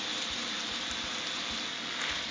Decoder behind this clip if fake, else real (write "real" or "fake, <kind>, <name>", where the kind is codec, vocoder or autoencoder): real